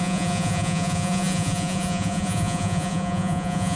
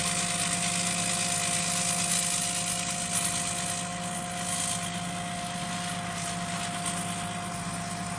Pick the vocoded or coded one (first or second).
first